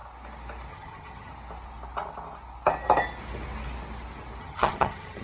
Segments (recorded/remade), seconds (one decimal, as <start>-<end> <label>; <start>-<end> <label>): 0.0-0.7 recorded; 0.7-1.3 remade; 1.3-4.4 recorded; 4.4-5.2 remade